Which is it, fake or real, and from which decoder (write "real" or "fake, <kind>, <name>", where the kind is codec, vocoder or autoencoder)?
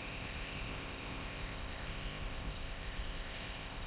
fake, codec, ZipCodec